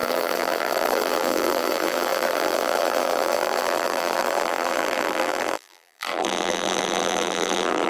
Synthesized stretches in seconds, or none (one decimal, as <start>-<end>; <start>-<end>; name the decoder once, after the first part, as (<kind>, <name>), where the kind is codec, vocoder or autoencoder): 0.0-7.9 (vocoder, BigVGAN v2)